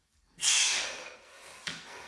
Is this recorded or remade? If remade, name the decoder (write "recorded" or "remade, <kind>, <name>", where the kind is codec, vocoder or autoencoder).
remade, codec, SNAC